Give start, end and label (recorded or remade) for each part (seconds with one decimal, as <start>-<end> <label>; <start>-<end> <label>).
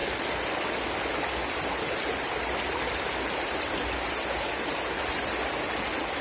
0.0-6.2 recorded